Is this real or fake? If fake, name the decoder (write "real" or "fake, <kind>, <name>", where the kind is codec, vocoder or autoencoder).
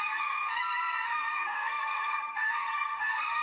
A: fake, codec, SNAC